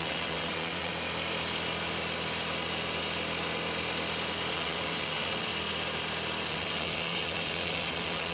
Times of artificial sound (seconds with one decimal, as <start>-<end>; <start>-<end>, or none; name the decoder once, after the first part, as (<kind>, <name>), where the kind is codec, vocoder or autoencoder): 0.0-0.9 (vocoder, WaveNeXt); 4.5-5.5; 6.5-8.3